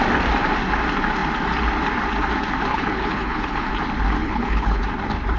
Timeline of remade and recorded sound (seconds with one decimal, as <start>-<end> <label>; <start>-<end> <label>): 0.0-2.7 recorded; 2.7-3.7 remade; 3.7-4.2 recorded; 4.2-4.8 remade; 4.8-5.4 recorded